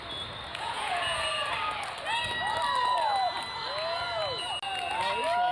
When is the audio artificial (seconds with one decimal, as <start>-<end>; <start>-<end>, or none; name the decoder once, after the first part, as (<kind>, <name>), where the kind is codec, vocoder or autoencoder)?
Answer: 0.5-1.2 (vocoder, Vocos)